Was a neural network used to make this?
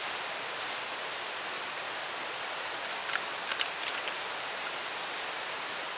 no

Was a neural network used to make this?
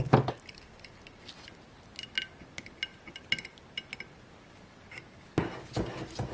no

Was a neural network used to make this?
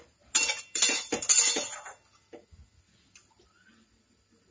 no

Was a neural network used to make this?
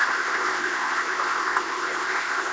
yes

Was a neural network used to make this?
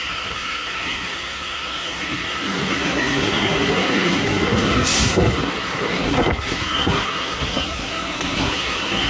yes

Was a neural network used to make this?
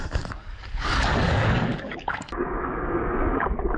yes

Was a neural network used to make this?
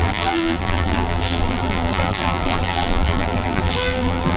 yes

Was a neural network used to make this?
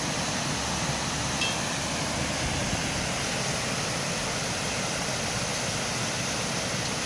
no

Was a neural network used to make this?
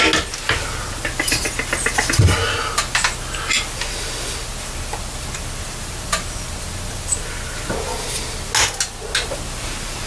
no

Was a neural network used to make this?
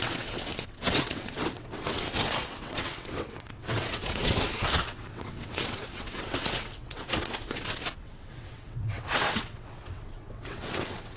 yes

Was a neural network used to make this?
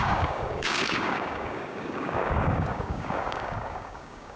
yes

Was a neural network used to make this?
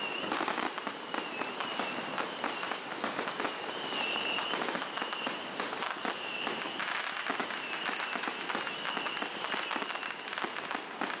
no